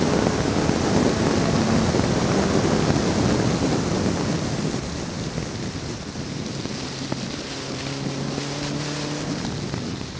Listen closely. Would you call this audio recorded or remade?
recorded